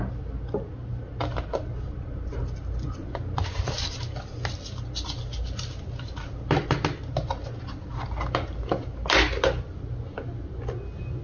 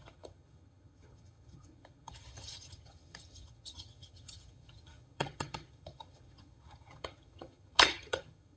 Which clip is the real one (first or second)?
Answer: first